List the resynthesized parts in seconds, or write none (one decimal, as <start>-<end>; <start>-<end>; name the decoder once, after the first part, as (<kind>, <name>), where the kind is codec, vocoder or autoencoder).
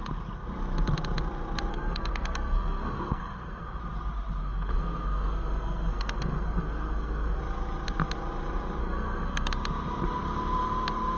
1.7-3.8 (codec, SNAC); 4.4-7.4; 8.8-9.5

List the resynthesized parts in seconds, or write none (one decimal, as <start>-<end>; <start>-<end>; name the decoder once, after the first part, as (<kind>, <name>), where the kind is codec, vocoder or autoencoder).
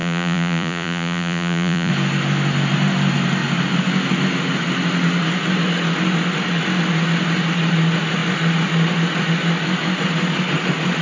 0.0-1.9 (vocoder, Vocos)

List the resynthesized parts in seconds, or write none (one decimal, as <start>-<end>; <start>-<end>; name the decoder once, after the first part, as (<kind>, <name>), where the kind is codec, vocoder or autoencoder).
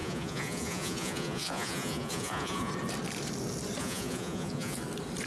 0.0-2.7 (vocoder, Vocos); 3.8-4.8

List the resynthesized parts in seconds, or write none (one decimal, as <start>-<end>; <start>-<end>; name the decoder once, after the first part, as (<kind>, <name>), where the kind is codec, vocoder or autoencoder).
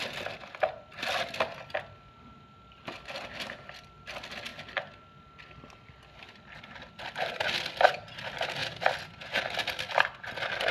none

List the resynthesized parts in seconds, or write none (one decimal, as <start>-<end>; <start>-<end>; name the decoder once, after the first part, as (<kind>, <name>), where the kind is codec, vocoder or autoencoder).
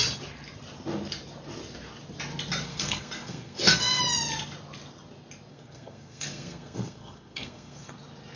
2.7-4.0 (codec, SNAC); 5.5-8.0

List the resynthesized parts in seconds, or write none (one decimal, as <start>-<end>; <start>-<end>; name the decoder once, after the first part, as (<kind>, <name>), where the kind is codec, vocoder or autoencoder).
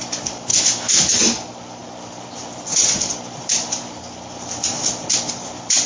0.5-1.2 (autoencoder, DAC-VAE)